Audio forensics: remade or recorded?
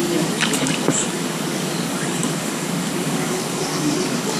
remade